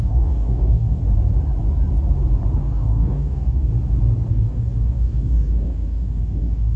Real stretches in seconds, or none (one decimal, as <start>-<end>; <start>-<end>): 1.0-2.6; 3.7-4.3